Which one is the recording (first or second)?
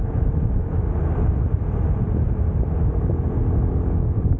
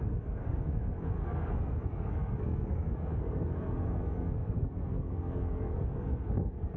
first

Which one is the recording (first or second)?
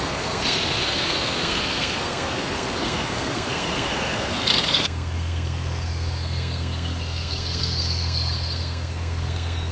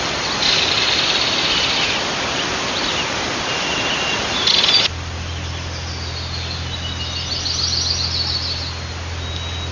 second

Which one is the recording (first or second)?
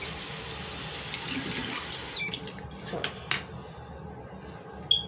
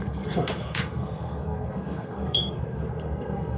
first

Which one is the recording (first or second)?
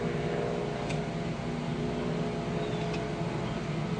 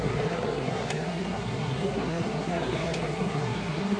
first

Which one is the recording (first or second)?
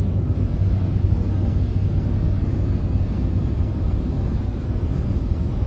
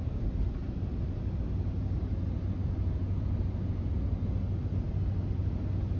second